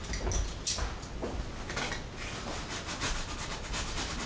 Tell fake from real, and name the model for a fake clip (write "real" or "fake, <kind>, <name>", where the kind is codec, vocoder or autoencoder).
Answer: real